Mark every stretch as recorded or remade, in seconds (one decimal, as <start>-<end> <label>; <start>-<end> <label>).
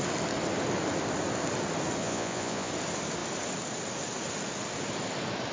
0.0-2.0 recorded; 2.0-2.7 remade; 2.7-5.5 recorded